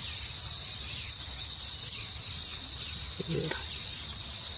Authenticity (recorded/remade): recorded